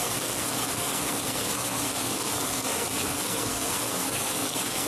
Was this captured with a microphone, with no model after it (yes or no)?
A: no